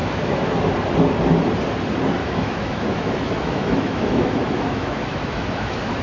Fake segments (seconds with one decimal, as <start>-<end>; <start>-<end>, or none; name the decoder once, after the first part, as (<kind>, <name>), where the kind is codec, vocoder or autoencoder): 0.0-0.5 (autoencoder, DAC-VAE); 2.2-6.0